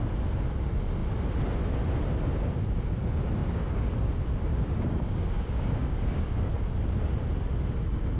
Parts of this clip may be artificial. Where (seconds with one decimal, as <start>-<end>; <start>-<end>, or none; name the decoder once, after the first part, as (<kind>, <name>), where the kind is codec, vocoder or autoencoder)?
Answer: 3.4-4.1 (codec, DAC); 4.5-6.5